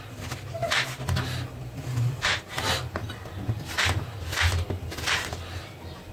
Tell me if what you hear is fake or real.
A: real